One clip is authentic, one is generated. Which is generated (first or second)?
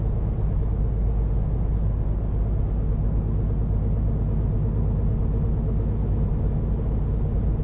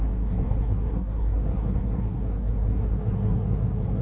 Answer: second